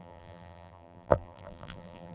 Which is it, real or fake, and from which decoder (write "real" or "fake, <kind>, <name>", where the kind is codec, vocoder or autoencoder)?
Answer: fake, vocoder, BigVGAN v2